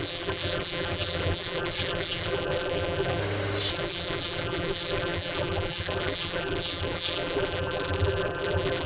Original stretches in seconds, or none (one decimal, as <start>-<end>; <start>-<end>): 3.2-3.7